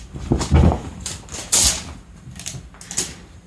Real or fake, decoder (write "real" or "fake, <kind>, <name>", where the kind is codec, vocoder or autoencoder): real